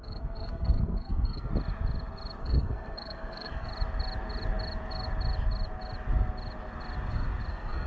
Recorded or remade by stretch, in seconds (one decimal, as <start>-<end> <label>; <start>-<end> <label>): 0.0-1.5 remade; 1.5-2.4 recorded; 2.4-3.7 remade; 3.7-7.5 recorded; 7.5-7.9 remade